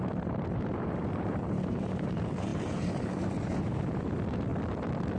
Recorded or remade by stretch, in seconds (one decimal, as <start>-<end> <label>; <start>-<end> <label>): 0.0-4.5 remade; 4.5-5.2 recorded